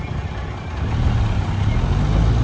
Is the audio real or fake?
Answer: real